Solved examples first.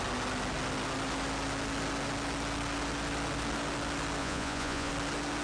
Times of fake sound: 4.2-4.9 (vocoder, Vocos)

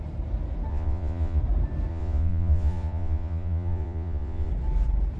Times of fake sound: 0.7-1.4 (vocoder, Vocos); 1.9-4.5

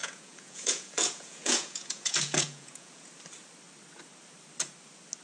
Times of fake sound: 0.0-3.1 (vocoder, Vocos)

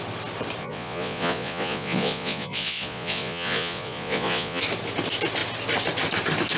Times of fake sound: 0.6-4.6 (vocoder, Vocos)

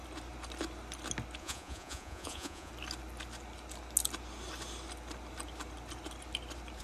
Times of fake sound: 1.4-2.7 (vocoder, Vocos)